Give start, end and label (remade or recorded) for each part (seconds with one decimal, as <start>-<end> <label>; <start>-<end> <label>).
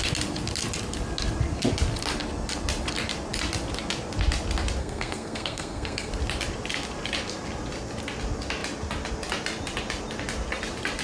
0.0-4.8 recorded; 4.8-6.1 remade; 6.1-11.0 recorded